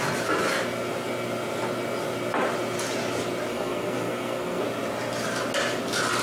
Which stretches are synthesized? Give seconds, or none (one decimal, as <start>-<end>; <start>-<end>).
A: 3.5-4.6